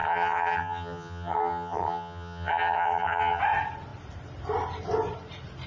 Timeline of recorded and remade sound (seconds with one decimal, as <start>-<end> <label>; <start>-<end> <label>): 0.0-3.4 remade; 3.4-5.7 recorded